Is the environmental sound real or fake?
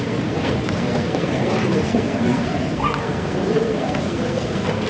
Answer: fake